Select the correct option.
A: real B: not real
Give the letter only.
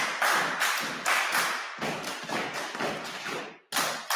A